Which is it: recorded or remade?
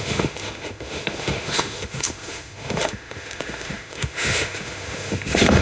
remade